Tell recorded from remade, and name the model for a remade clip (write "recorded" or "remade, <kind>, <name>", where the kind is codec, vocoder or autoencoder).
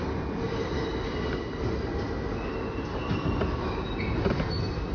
recorded